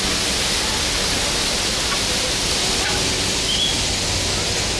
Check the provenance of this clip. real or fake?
real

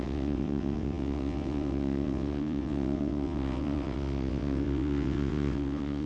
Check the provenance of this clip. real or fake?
fake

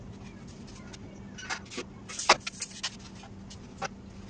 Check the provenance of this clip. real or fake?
real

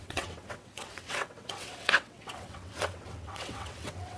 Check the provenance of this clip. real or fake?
fake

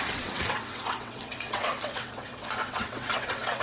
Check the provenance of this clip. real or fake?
fake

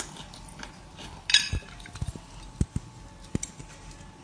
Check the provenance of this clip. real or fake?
real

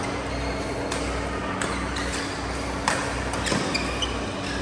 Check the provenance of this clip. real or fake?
real